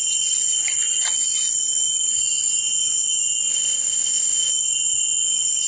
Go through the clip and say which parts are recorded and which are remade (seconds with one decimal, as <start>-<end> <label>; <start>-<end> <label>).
0.0-3.5 recorded; 3.5-4.5 remade; 4.5-5.7 recorded